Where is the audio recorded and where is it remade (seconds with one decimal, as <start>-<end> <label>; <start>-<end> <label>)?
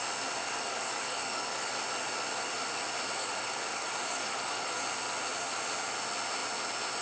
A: 0.0-0.4 recorded; 0.4-1.7 remade; 1.7-3.2 recorded; 3.2-4.8 remade; 4.8-7.0 recorded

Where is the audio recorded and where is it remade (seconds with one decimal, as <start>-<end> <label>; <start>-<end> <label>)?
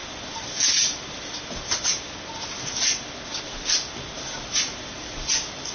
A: 0.0-5.7 recorded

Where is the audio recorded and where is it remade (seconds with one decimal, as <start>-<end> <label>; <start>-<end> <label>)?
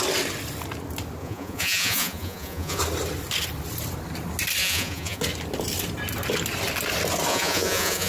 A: 0.0-1.2 recorded; 1.2-2.8 remade; 2.8-4.6 recorded; 4.6-5.2 remade; 5.2-7.3 recorded; 7.3-8.1 remade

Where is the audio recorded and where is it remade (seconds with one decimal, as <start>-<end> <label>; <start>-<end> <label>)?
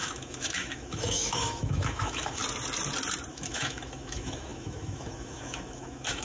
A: 0.0-2.4 remade; 2.4-3.3 recorded; 3.3-6.2 remade